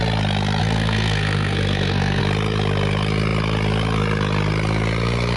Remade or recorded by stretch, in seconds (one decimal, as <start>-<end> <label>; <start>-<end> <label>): 0.0-0.6 recorded; 0.6-2.2 remade; 2.2-5.4 recorded